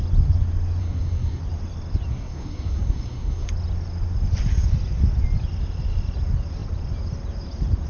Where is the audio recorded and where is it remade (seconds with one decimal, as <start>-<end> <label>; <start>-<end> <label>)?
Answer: 0.0-0.8 recorded; 0.8-1.4 remade; 1.4-2.1 recorded; 2.1-3.5 remade; 3.5-7.9 recorded